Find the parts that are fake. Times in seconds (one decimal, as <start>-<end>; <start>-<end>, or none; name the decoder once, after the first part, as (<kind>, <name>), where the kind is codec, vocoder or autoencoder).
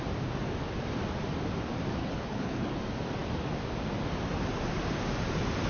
2.0-2.8 (codec, HILCodec)